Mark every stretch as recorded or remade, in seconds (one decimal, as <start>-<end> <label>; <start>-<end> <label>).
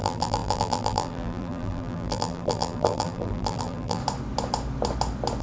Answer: 0.0-4.0 remade; 4.0-5.4 recorded